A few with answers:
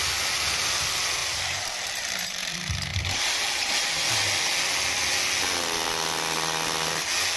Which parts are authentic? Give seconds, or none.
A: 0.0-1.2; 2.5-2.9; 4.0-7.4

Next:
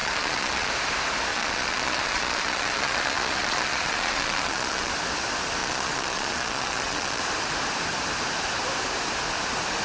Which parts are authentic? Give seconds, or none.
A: 0.7-1.3; 4.9-5.6; 7.2-9.8

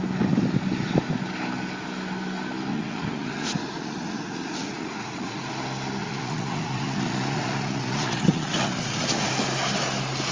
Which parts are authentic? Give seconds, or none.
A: 0.0-2.7; 5.5-6.0; 9.3-10.3

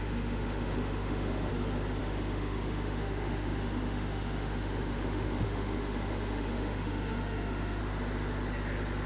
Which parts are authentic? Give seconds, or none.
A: 1.5-2.0; 7.8-9.1

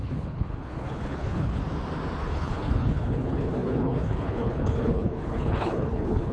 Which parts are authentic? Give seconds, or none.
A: 1.6-2.2

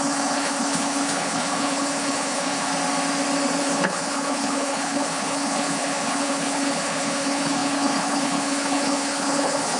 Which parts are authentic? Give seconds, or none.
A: 2.7-3.6

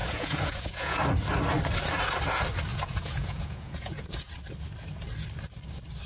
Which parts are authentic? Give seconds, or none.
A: 1.0-2.7; 4.3-6.1